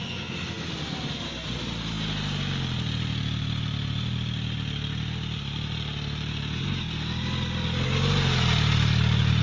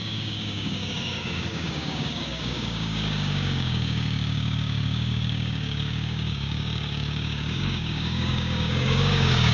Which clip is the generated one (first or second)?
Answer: second